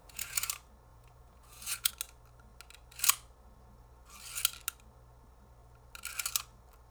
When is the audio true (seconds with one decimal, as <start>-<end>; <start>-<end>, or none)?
0.5-0.9; 1.9-6.9